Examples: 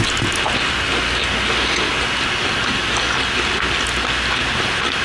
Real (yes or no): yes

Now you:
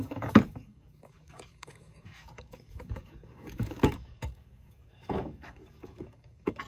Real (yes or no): no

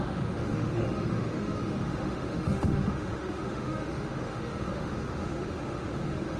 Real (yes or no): no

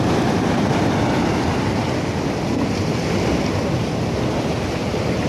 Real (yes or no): no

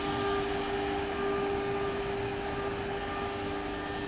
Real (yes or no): yes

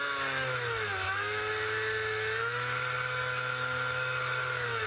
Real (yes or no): no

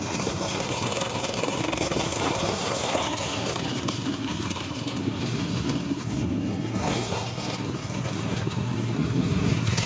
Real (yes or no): no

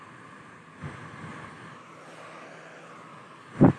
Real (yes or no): yes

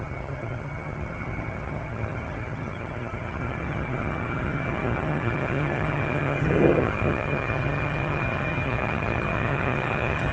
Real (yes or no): no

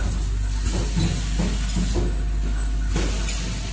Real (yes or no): yes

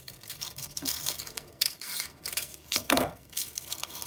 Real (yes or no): no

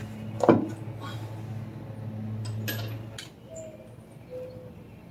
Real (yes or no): yes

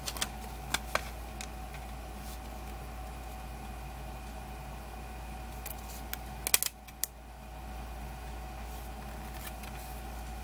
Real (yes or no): yes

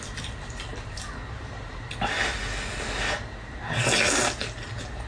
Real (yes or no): yes